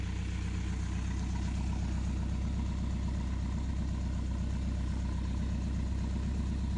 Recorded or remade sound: recorded